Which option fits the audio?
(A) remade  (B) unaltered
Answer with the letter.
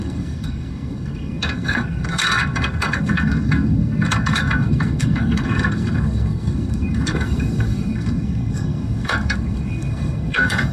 A